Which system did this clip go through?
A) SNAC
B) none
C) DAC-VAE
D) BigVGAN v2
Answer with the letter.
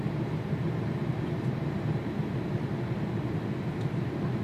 B